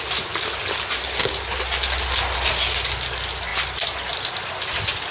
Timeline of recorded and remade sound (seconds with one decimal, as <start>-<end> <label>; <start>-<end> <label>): 0.0-5.1 recorded